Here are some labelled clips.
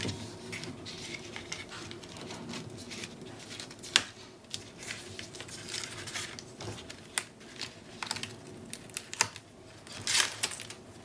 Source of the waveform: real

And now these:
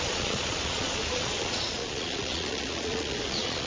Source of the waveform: fake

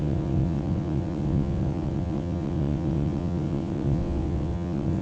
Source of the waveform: fake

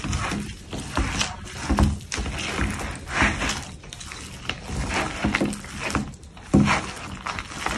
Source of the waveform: real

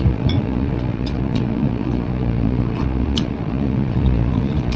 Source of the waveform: fake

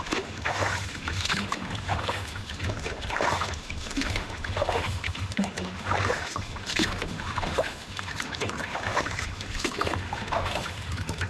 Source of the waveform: fake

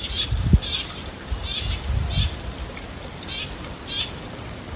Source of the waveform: real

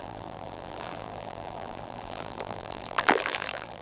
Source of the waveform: fake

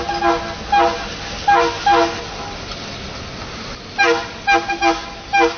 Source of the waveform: real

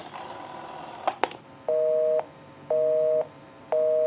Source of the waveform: real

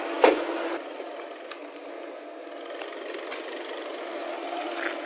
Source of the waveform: real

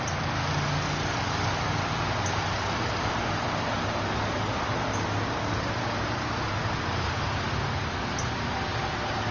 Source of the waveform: real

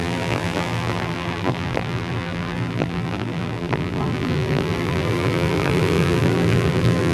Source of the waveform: fake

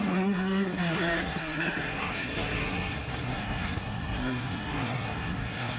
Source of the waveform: fake